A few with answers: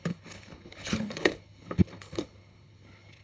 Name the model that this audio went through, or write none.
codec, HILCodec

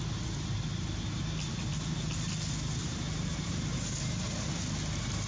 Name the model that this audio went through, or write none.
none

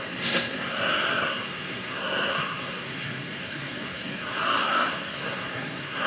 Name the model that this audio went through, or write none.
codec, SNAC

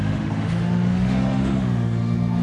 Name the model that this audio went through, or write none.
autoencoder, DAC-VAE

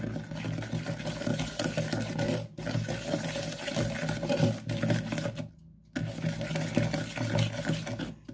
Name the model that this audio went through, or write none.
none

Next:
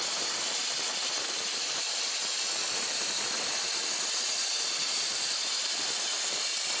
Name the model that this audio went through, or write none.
none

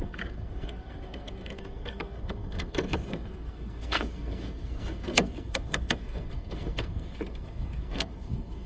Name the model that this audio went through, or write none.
codec, SNAC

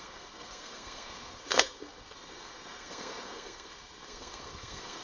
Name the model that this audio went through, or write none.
codec, SNAC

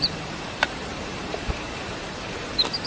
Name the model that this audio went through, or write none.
vocoder, BigVGAN v2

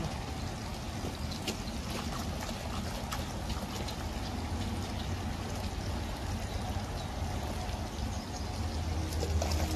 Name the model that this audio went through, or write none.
none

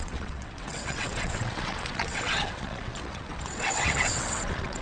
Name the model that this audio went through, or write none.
vocoder, WaveNeXt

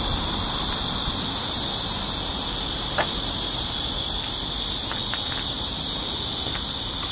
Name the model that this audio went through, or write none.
none